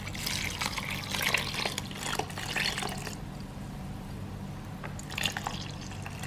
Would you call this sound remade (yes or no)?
no